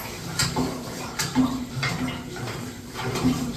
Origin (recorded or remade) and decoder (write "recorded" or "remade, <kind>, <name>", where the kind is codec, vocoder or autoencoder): remade, vocoder, BigVGAN v2